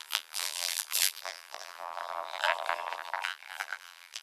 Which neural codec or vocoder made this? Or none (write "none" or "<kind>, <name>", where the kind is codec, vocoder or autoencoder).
vocoder, BigVGAN v2